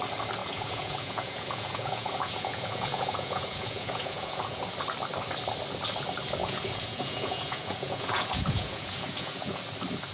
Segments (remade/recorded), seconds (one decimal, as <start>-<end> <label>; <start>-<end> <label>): 0.0-0.4 recorded; 0.4-4.7 remade; 4.7-6.4 recorded; 6.4-9.6 remade; 9.6-10.1 recorded